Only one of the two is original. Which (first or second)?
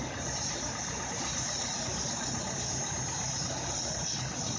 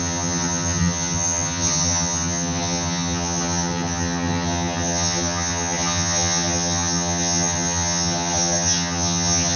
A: first